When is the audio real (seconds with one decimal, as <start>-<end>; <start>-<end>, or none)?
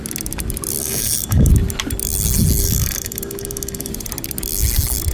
0.0-0.8; 1.5-2.6; 3.9-5.1